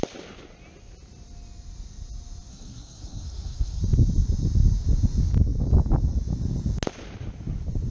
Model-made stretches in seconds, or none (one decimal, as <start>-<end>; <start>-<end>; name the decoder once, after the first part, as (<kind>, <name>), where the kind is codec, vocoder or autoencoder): 2.5-3.8 (codec, SNAC)